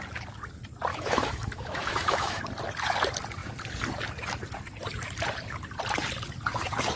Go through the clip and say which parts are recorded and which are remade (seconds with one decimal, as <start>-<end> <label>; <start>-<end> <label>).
0.0-0.9 recorded; 0.9-2.4 remade; 2.4-7.0 recorded